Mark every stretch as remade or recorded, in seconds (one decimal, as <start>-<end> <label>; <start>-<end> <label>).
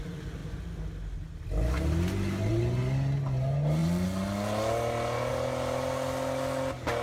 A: 0.0-7.0 recorded